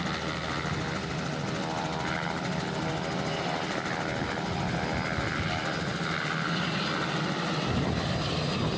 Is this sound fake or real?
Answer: real